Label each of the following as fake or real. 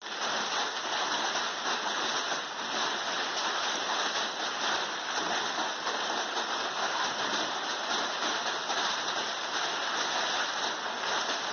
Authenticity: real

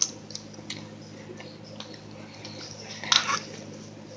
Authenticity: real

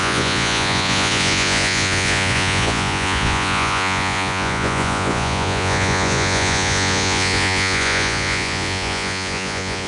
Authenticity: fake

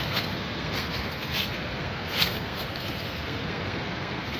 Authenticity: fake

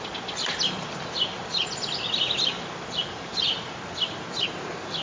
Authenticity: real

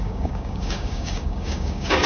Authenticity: fake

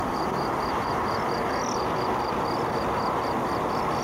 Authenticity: real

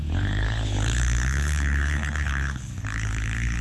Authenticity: fake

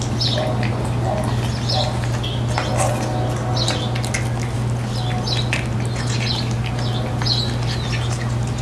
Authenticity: real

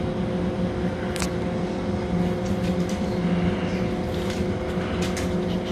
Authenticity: real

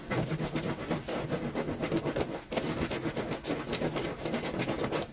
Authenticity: real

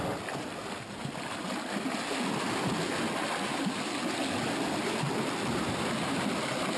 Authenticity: real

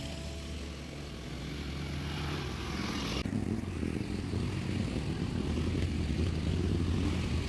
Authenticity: real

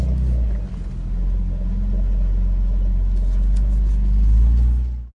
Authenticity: real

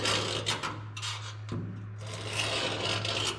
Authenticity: real